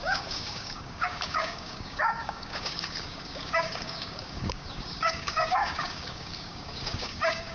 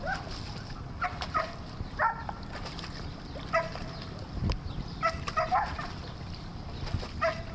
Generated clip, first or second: first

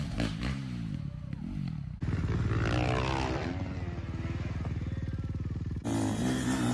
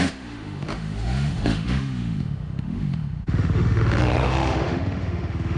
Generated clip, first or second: second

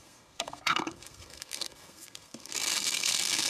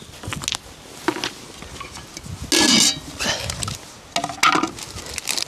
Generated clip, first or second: first